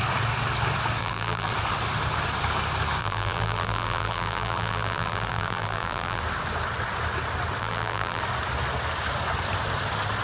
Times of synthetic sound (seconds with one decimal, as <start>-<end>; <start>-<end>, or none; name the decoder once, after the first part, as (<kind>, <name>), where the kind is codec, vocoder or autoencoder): 1.0-1.5 (vocoder, BigVGAN v2); 3.0-6.2; 7.6-8.2